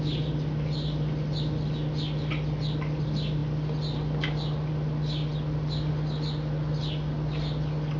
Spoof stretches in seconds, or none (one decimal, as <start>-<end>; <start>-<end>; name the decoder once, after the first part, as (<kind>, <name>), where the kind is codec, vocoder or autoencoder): none